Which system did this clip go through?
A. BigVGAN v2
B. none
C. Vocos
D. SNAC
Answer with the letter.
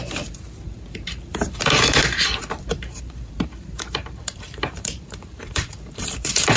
A